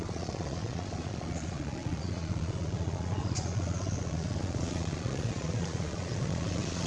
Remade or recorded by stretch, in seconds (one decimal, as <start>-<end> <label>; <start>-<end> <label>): 0.0-6.9 remade